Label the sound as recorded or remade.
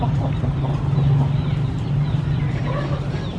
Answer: recorded